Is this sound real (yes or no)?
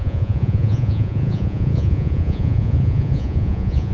no